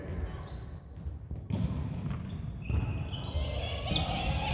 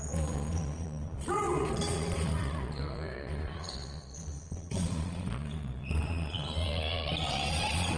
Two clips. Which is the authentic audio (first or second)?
first